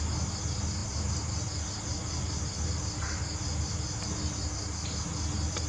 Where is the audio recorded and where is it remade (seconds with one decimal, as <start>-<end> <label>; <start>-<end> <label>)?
0.0-5.7 recorded